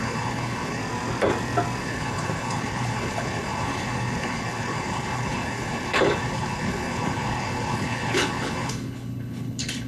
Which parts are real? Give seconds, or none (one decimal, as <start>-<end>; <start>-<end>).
0.8-1.8